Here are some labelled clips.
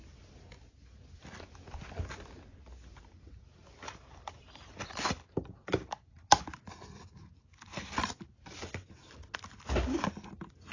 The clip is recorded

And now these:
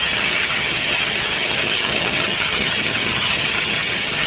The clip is remade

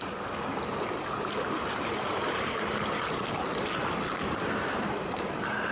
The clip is recorded